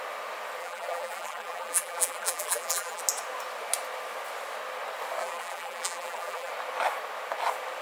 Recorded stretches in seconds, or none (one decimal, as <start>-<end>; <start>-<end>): 0.0-0.6; 3.0-5.2; 6.5-7.8